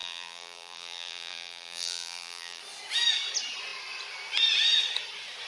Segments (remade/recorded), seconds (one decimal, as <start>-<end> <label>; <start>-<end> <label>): 0.0-2.6 remade; 2.6-5.5 recorded